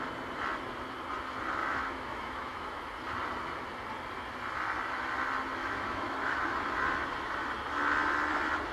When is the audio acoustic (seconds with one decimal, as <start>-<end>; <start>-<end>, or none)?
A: 0.0-1.6; 2.9-5.6; 6.7-8.7

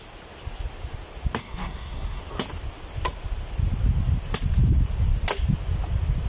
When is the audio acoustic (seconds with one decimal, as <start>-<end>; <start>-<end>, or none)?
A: 0.0-1.4; 2.2-6.3